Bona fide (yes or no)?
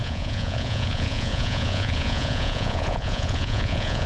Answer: no